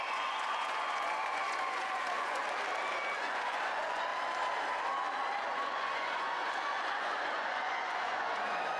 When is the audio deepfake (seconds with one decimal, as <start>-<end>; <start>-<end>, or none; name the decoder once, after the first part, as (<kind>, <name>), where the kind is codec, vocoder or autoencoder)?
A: 0.0-2.4 (vocoder, Vocos); 3.2-4.1; 5.4-8.8